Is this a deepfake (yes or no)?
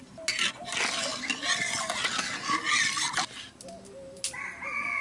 no